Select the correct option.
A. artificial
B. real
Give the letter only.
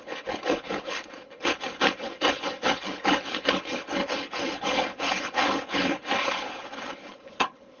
A